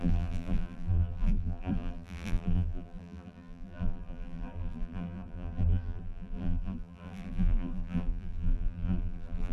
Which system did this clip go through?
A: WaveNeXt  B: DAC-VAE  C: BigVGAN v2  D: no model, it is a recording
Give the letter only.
C